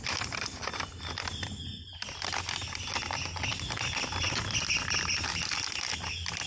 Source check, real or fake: real